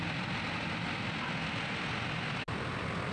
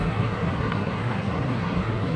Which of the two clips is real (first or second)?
first